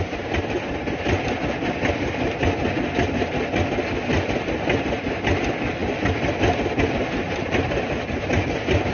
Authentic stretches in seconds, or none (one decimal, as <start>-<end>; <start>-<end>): 0.0-8.9